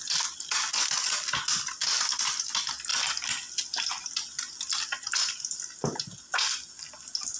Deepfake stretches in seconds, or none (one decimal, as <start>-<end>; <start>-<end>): none